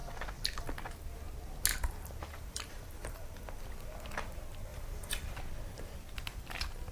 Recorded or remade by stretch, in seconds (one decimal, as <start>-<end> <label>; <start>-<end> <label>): 0.0-1.7 recorded; 1.7-3.3 remade; 3.3-4.7 recorded; 4.7-5.4 remade; 5.4-6.9 recorded